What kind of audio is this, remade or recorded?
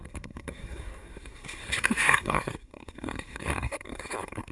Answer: remade